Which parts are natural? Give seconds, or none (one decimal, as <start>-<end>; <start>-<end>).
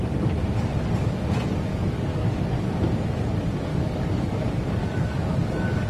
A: 0.0-1.7; 2.4-3.7